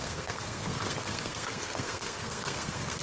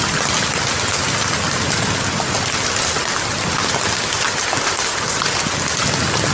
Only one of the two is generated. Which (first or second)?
first